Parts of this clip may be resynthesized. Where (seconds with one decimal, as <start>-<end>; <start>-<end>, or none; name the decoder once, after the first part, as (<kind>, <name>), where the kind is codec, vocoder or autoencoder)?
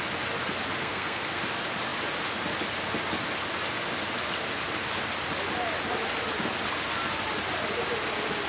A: 0.8-1.4 (codec, SNAC)